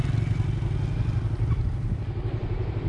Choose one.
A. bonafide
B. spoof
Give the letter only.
A